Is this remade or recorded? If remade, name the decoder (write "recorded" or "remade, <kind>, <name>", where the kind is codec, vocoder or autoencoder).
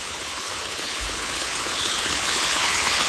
remade, codec, HILCodec